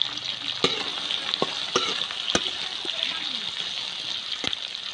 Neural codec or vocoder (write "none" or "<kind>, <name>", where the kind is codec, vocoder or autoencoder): none